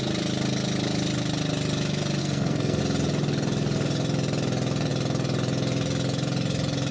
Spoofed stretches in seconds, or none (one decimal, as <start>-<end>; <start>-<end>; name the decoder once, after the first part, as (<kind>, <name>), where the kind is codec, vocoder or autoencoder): 2.2-2.8 (codec, SNAC)